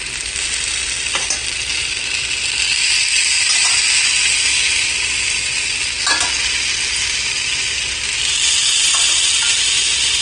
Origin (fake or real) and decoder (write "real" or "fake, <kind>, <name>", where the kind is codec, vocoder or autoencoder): real